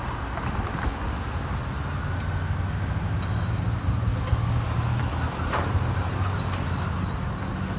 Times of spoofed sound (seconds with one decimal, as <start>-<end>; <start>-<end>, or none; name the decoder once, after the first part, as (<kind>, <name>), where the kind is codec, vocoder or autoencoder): none